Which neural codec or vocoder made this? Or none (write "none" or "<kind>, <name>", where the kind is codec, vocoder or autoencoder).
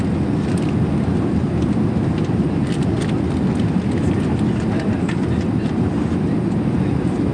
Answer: none